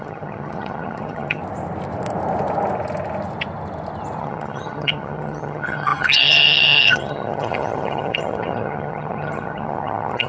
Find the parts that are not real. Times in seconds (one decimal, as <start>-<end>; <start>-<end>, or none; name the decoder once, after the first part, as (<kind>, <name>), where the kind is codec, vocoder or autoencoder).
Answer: 0.0-1.4 (vocoder, HiFi-GAN); 4.2-10.3